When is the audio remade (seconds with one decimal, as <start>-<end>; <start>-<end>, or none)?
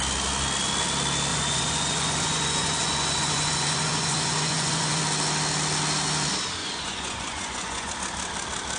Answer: 1.3-5.0; 6.6-7.9